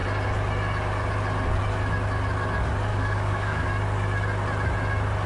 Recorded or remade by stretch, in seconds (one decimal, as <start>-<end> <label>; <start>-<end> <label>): 0.0-2.9 recorded; 2.9-3.7 remade; 3.7-5.3 recorded